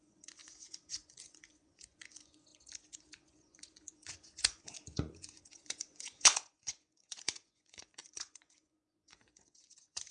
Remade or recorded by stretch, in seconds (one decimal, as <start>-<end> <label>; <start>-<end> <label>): 0.0-10.1 remade